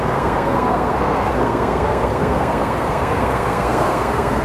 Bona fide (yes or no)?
no